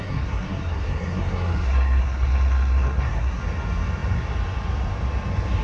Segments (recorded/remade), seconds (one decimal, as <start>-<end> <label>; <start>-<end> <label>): 0.0-3.4 remade; 3.4-5.6 recorded